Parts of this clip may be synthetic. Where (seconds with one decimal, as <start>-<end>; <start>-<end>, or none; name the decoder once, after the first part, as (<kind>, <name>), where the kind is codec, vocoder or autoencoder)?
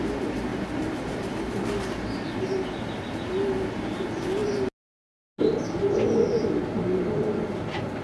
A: none